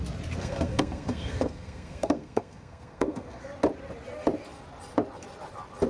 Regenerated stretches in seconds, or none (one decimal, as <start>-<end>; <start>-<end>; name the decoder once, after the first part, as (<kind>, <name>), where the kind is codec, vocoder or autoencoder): 0.4-3.4 (codec, SNAC)